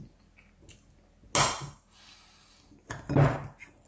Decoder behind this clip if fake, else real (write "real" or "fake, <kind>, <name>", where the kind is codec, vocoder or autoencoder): real